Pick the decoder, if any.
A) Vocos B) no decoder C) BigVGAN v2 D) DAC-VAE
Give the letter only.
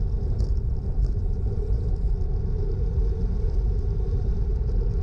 C